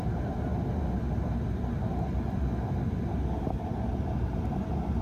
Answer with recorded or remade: recorded